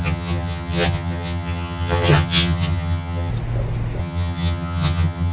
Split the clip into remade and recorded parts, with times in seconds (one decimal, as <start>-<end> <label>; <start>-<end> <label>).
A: 0.0-3.3 remade; 3.3-4.0 recorded; 4.0-5.3 remade